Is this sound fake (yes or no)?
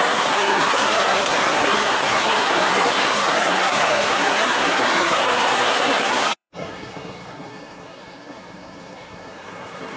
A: yes